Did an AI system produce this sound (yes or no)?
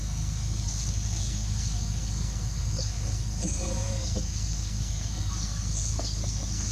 yes